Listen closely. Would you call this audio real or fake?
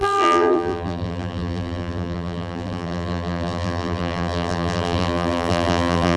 fake